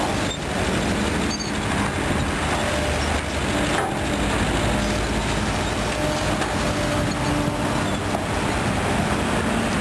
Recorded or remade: recorded